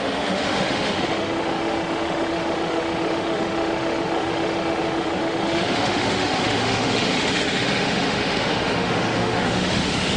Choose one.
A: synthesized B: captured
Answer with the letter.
A